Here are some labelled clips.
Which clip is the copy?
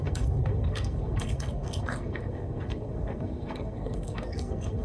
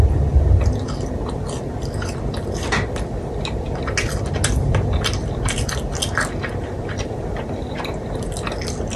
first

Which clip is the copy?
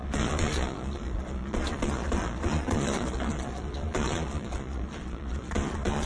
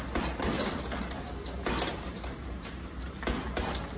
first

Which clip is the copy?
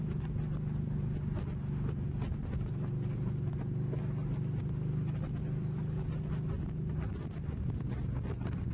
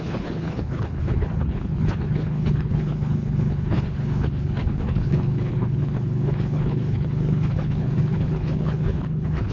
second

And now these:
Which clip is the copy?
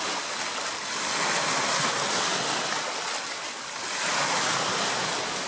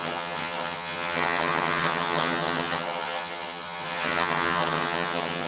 second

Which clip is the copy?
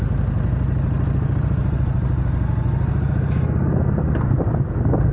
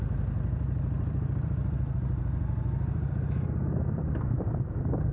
second